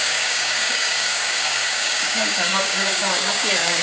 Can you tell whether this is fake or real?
fake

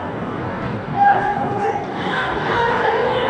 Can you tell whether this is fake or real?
fake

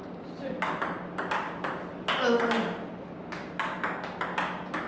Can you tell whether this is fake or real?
real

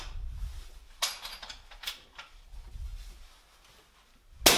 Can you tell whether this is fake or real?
real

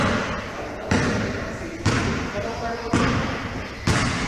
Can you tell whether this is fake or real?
real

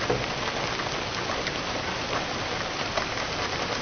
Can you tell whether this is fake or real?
real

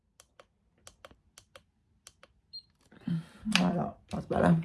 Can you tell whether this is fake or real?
real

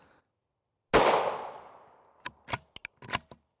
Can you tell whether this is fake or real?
real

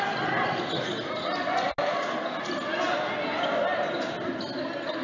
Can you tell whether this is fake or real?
real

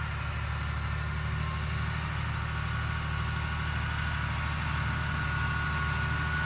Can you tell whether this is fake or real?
real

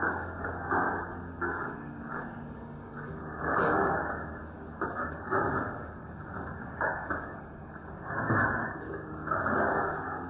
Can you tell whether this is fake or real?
fake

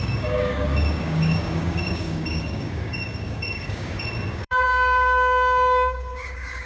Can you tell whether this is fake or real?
fake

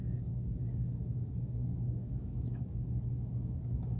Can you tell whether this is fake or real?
fake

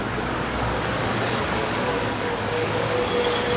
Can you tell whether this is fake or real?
fake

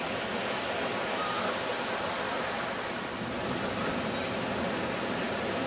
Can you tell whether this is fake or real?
real